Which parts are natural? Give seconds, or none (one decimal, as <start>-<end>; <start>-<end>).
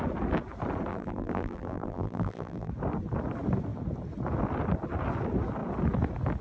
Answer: 0.0-0.9; 2.7-6.4